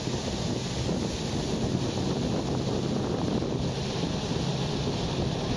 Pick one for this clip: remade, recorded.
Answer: recorded